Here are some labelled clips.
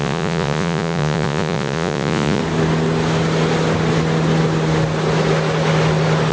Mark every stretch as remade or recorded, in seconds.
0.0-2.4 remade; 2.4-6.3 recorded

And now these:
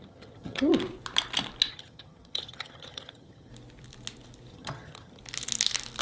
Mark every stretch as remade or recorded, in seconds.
0.0-0.7 remade; 0.7-1.7 recorded; 1.7-3.5 remade; 3.5-4.5 recorded; 4.5-5.2 remade; 5.2-6.0 recorded

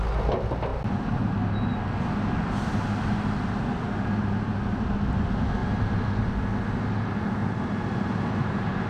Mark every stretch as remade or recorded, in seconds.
0.0-5.6 recorded; 5.6-6.3 remade; 6.3-7.4 recorded; 7.4-8.9 remade

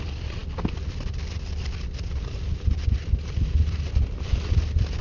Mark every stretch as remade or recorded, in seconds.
0.0-5.0 recorded

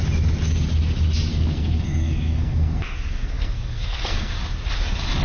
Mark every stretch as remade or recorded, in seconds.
0.0-1.3 recorded; 1.3-4.4 remade; 4.4-5.2 recorded

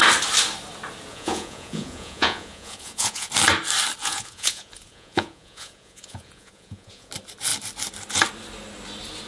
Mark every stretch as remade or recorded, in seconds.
0.0-1.1 recorded; 1.1-3.3 remade; 3.3-4.0 recorded; 4.0-7.1 remade; 7.1-9.3 recorded

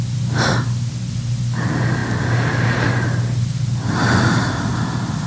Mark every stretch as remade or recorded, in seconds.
0.0-5.3 recorded

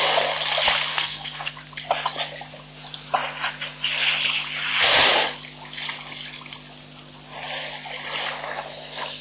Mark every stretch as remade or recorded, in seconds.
0.0-0.9 recorded; 0.9-1.5 remade; 1.5-9.2 recorded